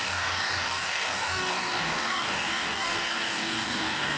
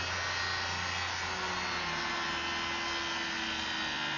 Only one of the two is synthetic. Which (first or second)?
first